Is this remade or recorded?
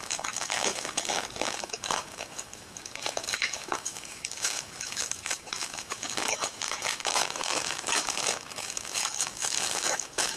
remade